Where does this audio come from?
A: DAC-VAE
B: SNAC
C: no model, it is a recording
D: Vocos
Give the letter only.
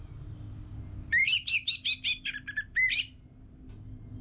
C